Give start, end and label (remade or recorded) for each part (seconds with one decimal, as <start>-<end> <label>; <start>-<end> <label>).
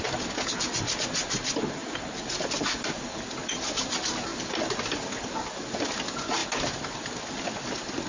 0.0-1.8 recorded; 1.8-2.5 remade; 2.5-8.1 recorded